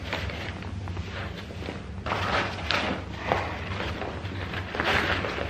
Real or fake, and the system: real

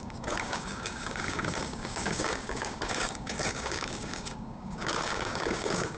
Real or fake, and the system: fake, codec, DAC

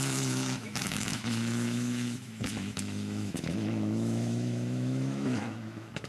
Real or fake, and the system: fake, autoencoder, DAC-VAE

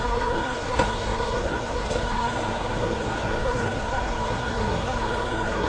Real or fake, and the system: fake, codec, SNAC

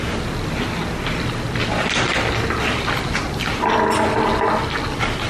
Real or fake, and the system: real